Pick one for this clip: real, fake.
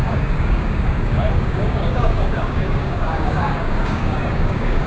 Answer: fake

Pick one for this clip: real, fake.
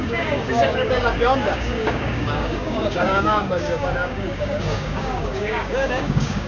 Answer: fake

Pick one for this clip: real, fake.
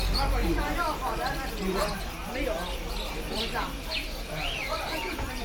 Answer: real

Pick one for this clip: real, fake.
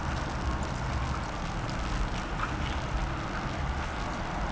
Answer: real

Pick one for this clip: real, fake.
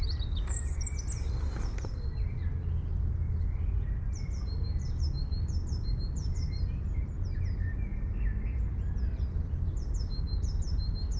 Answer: real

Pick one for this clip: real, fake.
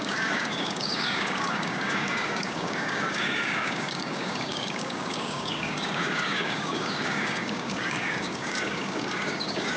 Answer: fake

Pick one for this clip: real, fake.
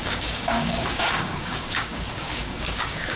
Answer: fake